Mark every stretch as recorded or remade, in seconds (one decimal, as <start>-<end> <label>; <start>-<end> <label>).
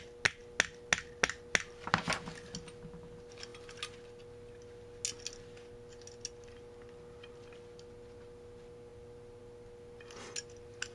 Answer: 0.0-10.9 recorded